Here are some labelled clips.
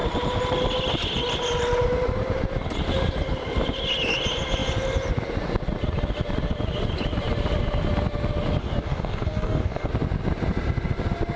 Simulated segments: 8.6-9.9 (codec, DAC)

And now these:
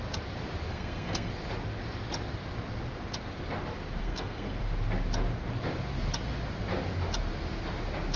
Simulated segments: 0.7-1.3 (codec, SNAC); 4.0-4.6